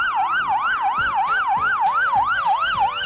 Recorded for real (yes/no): yes